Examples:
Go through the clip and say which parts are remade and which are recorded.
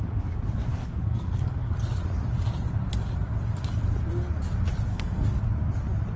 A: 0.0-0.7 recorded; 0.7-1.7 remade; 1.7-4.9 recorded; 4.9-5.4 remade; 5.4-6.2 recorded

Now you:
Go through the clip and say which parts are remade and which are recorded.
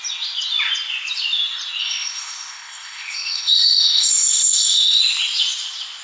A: 0.0-1.8 recorded; 1.8-5.0 remade; 5.0-6.0 recorded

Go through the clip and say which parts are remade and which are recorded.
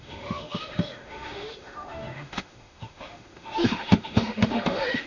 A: 0.0-5.1 remade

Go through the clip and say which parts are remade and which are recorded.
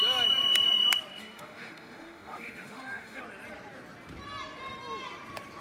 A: 0.0-1.2 recorded; 1.2-3.2 remade; 3.2-5.6 recorded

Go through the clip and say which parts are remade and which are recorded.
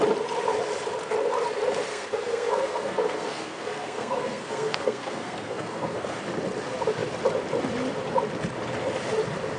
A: 0.0-1.9 recorded; 1.9-6.2 remade; 6.2-9.6 recorded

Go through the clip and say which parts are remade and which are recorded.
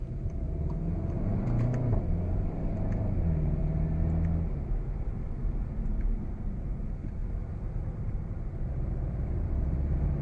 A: 0.0-3.6 remade; 3.6-5.0 recorded; 5.0-7.2 remade; 7.2-8.0 recorded; 8.0-10.2 remade